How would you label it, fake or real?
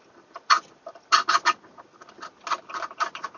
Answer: real